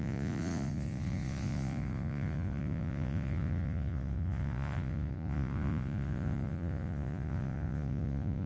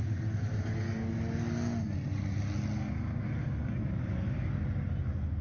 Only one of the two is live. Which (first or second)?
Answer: second